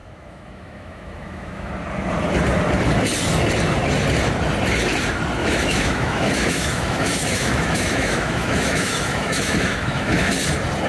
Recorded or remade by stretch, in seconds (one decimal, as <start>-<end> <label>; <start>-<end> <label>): 0.0-1.7 remade; 1.7-5.4 recorded; 5.4-10.3 remade; 10.3-10.9 recorded